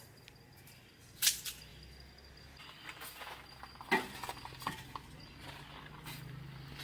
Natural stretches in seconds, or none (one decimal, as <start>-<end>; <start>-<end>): 0.0-6.8